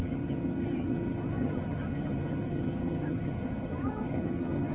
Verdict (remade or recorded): remade